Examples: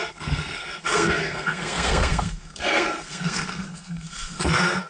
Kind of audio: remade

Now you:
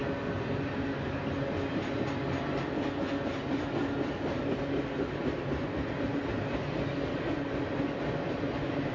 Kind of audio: recorded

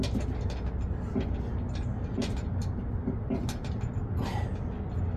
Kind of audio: recorded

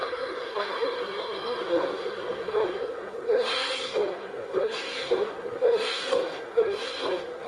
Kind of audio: remade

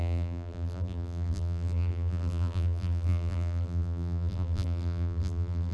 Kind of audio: remade